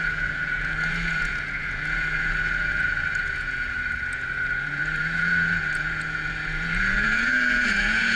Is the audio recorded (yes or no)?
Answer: no